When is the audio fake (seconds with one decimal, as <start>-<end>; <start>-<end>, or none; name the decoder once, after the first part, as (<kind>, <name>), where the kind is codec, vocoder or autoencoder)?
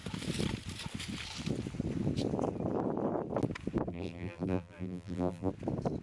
3.9-5.5 (vocoder, BigVGAN v2)